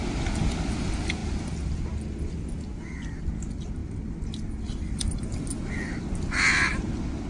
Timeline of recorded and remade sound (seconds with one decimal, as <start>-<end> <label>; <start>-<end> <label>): 0.0-7.3 recorded